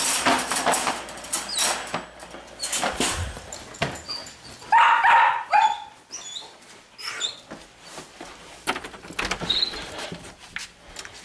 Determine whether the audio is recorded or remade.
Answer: recorded